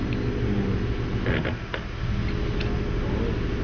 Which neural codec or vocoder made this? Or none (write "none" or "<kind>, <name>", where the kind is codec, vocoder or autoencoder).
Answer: none